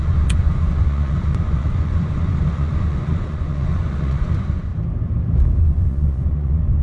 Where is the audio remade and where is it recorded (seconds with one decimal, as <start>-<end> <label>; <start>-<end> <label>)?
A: 0.0-4.7 remade; 4.7-5.6 recorded; 5.6-6.8 remade